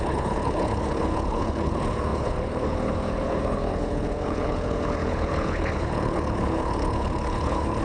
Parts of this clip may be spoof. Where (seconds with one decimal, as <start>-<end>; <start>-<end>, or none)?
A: 0.0-7.8